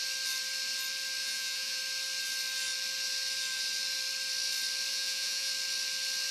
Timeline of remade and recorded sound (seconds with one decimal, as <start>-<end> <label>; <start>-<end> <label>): 0.0-1.2 recorded; 1.2-1.8 remade; 1.8-4.9 recorded; 4.9-5.5 remade; 5.5-6.3 recorded

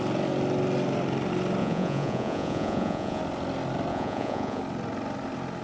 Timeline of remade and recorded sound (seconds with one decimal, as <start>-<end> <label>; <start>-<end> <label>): 0.0-1.6 recorded; 1.6-3.2 remade; 3.2-3.9 recorded; 3.9-4.6 remade; 4.6-5.6 recorded

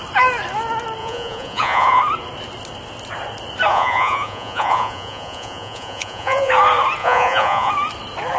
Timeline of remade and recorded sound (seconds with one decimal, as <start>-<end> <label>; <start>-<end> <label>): 0.0-1.0 recorded; 1.0-2.0 remade; 2.0-3.7 recorded; 3.7-6.5 remade; 6.5-7.0 recorded; 7.0-7.7 remade; 7.7-8.4 recorded

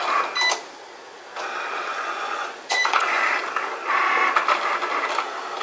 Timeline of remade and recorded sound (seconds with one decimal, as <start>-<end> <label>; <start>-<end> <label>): 0.0-1.9 recorded; 1.9-3.3 remade; 3.3-5.6 recorded

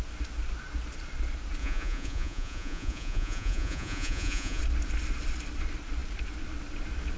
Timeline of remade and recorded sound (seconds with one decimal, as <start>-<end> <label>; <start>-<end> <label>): 0.0-1.6 recorded; 1.6-4.6 remade; 4.6-7.2 recorded

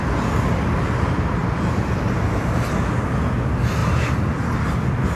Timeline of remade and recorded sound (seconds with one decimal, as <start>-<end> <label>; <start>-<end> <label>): 0.0-5.2 recorded

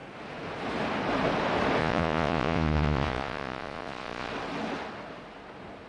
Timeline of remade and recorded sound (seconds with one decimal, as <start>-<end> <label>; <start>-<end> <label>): 0.0-1.8 recorded; 1.8-4.3 remade; 4.3-5.9 recorded